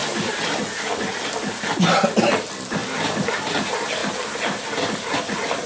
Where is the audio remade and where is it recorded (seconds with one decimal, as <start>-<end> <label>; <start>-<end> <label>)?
0.0-1.0 remade; 1.0-2.8 recorded; 2.8-3.5 remade; 3.5-4.0 recorded; 4.0-5.2 remade; 5.2-5.7 recorded